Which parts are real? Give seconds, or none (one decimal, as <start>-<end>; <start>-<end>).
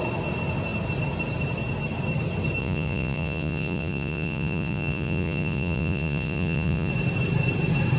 0.0-2.6; 6.9-8.0